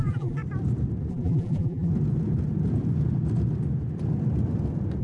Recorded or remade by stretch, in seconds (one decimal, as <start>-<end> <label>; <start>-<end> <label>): 0.0-0.4 remade; 0.4-1.1 recorded; 1.1-1.9 remade; 1.9-5.0 recorded